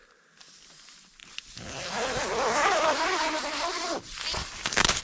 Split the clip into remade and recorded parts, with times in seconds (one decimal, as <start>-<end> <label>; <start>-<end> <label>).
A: 0.0-4.4 recorded; 4.4-5.0 remade